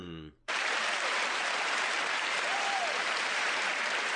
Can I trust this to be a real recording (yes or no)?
no